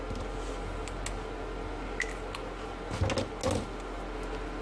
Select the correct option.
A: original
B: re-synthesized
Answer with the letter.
A